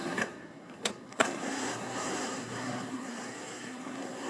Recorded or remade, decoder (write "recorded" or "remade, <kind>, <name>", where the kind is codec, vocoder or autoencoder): remade, codec, SNAC